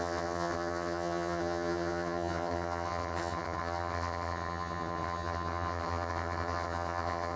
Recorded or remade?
remade